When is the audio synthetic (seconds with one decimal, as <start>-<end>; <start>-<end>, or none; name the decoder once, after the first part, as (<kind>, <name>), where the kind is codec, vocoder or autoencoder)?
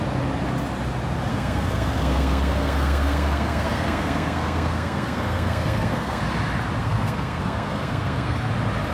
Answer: 1.3-6.2 (codec, SNAC); 6.8-8.5